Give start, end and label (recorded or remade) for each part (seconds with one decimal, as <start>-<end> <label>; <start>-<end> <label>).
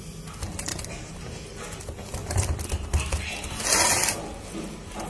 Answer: 0.0-0.7 recorded; 0.7-1.8 remade; 1.8-2.2 recorded; 2.2-3.3 remade; 3.3-5.1 recorded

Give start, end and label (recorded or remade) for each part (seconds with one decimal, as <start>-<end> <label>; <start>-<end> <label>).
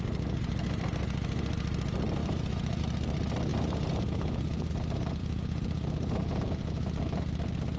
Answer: 0.0-2.2 recorded; 2.2-2.8 remade; 2.8-3.5 recorded; 3.5-4.7 remade; 4.7-5.2 recorded; 5.2-6.7 remade; 6.7-7.8 recorded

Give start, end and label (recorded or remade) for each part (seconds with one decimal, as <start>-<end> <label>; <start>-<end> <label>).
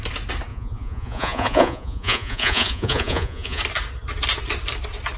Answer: 0.0-0.5 recorded; 0.5-3.6 remade; 3.6-5.2 recorded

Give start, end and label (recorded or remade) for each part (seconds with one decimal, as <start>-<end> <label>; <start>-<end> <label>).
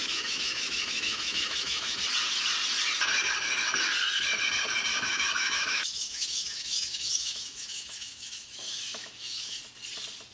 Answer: 0.0-2.0 remade; 2.0-4.9 recorded; 4.9-9.6 remade; 9.6-10.3 recorded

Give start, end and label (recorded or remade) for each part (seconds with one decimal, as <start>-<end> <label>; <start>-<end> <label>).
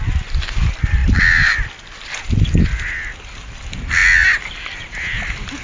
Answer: 0.0-5.6 recorded